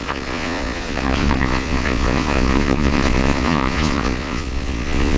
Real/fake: fake